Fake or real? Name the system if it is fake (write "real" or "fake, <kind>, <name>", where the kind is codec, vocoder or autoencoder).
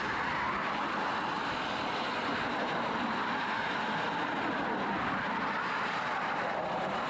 real